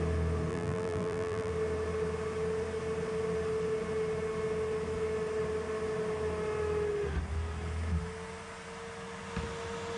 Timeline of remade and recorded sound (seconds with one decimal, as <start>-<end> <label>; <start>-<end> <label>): 0.0-0.5 recorded; 0.5-1.5 remade; 1.5-10.0 recorded